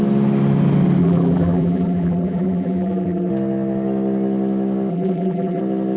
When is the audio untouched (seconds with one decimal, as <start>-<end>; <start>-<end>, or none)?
0.0-1.0; 3.3-4.9; 5.6-6.0